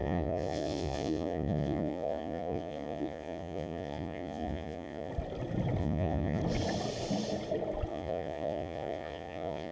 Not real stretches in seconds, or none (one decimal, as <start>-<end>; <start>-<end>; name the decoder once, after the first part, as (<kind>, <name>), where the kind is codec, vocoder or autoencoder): 0.0-5.1 (vocoder, Vocos); 5.8-6.4; 7.9-9.7